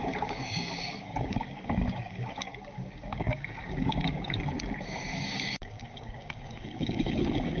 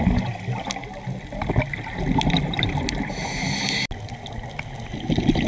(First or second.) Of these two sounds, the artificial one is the first